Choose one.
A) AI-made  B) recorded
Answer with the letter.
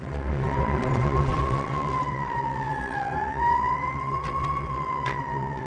A